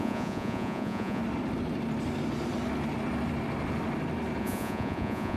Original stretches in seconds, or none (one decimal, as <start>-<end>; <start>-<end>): 1.2-4.4